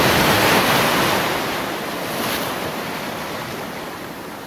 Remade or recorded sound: recorded